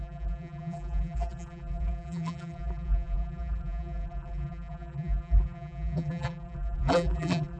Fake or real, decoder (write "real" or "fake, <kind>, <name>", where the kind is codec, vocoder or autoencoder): fake, vocoder, BigVGAN v2